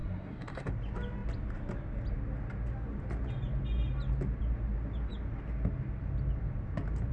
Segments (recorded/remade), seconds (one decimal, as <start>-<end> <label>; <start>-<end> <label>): 0.0-0.7 remade; 0.7-7.1 recorded